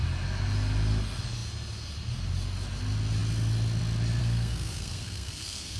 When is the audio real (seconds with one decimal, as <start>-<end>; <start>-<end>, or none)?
0.0-4.2